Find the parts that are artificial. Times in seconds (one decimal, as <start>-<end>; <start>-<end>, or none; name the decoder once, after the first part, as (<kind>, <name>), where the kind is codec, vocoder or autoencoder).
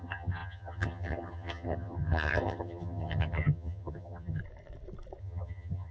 0.0-4.4 (vocoder, HiFi-GAN); 5.2-5.9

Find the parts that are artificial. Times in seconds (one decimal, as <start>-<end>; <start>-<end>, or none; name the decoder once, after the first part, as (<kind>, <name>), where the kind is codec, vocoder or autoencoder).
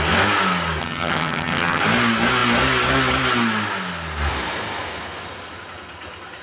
0.8-1.8 (vocoder, HiFi-GAN)